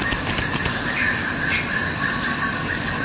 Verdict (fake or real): real